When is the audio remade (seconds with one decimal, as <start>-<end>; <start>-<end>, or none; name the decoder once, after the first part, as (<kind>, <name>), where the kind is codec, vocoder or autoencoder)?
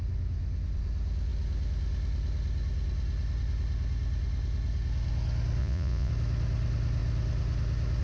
5.6-6.1 (vocoder, Vocos)